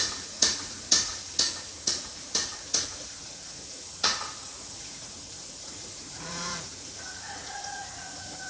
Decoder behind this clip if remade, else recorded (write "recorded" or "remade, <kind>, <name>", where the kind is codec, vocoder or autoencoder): remade, vocoder, Vocos